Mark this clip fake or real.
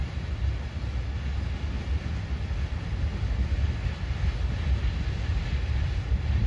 real